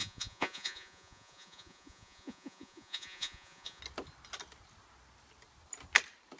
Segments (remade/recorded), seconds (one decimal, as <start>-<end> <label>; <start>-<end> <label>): 0.0-3.8 remade; 3.8-6.4 recorded